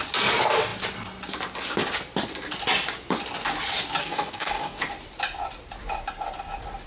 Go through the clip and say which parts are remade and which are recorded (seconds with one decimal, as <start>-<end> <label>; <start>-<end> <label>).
0.0-4.0 recorded; 4.0-4.8 remade; 4.8-6.9 recorded